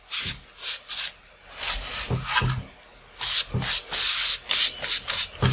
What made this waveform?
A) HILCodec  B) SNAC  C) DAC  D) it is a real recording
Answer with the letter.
D